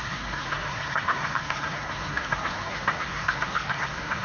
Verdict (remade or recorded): remade